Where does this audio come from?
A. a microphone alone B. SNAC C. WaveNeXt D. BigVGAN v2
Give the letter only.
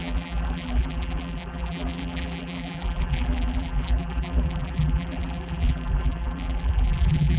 D